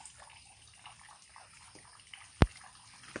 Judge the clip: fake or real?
real